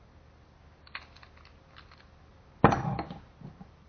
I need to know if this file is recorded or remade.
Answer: recorded